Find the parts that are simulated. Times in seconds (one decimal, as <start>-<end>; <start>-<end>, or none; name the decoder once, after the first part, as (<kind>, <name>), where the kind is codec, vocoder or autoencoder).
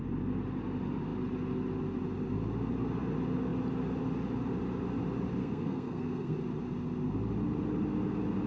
5.4-6.4 (codec, SNAC)